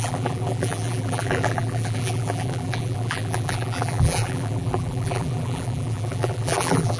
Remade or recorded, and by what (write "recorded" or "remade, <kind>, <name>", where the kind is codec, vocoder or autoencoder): remade, vocoder, BigVGAN v2